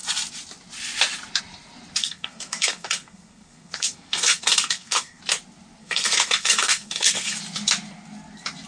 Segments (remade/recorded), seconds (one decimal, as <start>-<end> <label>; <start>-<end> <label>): 0.0-2.0 recorded; 2.0-5.2 remade; 5.2-5.8 recorded; 5.8-7.4 remade; 7.4-8.7 recorded